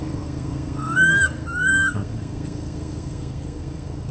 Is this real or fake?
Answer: fake